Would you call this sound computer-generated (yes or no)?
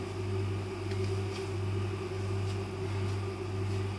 no